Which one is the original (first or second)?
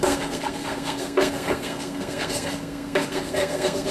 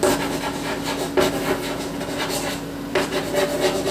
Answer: second